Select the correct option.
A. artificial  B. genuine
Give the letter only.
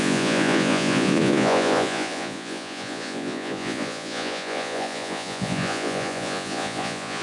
A